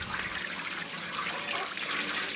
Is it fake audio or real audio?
real